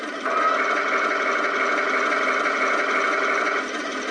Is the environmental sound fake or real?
real